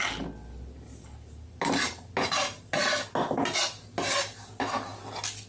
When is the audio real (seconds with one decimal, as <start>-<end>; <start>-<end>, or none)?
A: 0.0-5.5